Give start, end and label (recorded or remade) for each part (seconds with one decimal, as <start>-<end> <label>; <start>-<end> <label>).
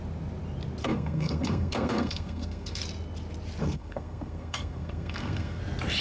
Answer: 0.0-0.8 recorded; 0.8-2.8 remade; 2.8-3.6 recorded; 3.6-5.6 remade; 5.6-6.0 recorded